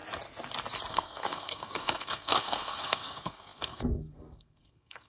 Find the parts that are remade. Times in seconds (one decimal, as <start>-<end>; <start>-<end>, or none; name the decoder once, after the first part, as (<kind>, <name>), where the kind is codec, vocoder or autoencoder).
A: 0.9-5.1 (codec, SNAC)